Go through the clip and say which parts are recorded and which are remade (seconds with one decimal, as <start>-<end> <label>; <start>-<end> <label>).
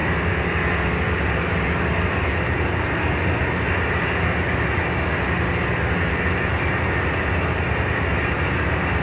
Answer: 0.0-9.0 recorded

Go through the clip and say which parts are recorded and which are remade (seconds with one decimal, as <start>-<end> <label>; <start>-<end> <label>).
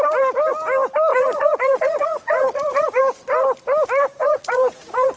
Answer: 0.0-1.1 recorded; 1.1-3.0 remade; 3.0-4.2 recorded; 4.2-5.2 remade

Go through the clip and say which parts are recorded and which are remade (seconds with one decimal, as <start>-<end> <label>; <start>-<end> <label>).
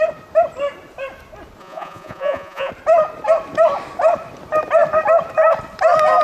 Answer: 0.0-1.6 recorded; 1.6-2.7 remade; 2.7-6.2 recorded